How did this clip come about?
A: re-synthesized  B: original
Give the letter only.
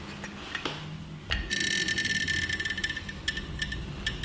B